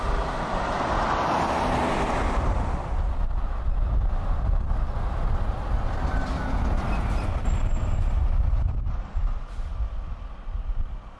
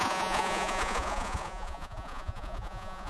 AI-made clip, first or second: second